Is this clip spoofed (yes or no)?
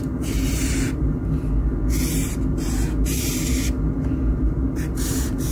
no